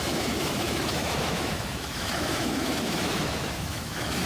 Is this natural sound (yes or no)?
no